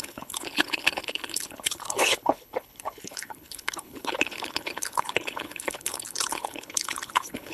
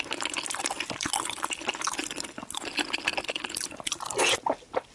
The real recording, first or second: second